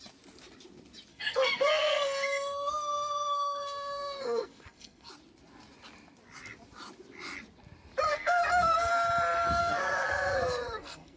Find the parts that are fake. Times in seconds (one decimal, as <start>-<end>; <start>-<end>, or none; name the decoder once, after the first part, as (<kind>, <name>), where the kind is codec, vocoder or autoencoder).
1.1-5.1 (codec, SNAC); 8.1-8.9; 9.6-11.2